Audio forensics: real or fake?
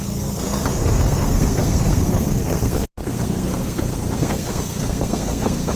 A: fake